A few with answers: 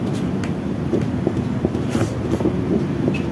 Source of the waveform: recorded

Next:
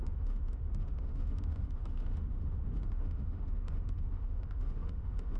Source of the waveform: remade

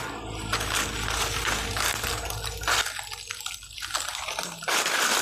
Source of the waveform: recorded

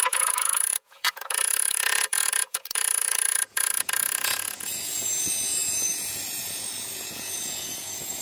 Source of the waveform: remade